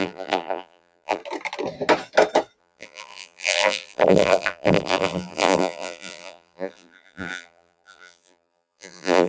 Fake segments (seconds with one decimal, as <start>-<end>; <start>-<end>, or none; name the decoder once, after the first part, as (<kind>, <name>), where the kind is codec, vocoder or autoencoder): 0.0-1.2 (vocoder, BigVGAN v2); 2.6-9.3

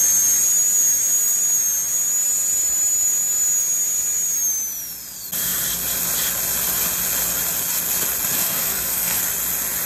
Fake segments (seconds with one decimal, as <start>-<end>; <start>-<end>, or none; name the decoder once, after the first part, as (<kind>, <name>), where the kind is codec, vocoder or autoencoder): 8.3-9.2 (codec, SNAC)

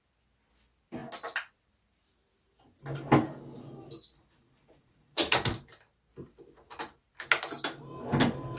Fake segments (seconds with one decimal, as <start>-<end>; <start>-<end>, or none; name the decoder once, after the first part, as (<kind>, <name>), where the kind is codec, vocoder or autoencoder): 4.2-5.3 (vocoder, Vocos)

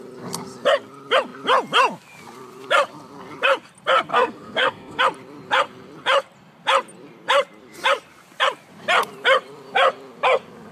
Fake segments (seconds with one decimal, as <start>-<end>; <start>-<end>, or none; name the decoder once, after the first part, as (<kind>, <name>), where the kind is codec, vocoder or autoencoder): 4.1-5.0 (codec, SNAC)

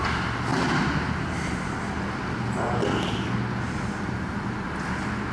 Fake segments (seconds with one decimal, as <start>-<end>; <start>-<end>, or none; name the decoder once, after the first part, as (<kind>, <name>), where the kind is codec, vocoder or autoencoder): none

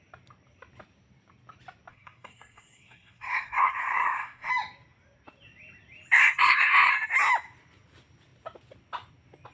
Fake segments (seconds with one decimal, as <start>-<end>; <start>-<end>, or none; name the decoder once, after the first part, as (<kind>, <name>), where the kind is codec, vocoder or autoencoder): 1.9-4.5 (codec, SNAC); 6.2-6.9

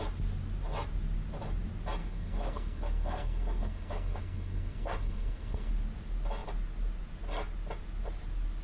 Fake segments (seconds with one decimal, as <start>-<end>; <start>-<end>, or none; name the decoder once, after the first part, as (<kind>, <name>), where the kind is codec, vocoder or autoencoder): 2.0-5.7 (codec, SNAC)

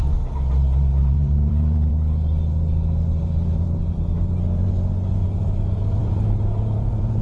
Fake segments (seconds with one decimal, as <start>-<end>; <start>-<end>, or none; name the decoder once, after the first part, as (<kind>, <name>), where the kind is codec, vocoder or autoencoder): 1.0-1.9 (vocoder, BigVGAN v2); 3.2-7.2